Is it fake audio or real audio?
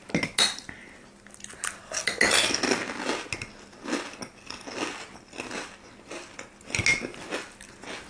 real